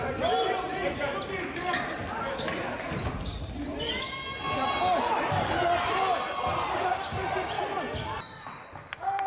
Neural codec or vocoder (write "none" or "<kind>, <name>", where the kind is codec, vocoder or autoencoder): none